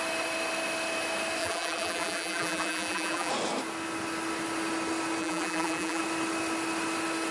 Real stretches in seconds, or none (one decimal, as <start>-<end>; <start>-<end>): 0.0-1.4; 3.3-5.2; 6.0-7.3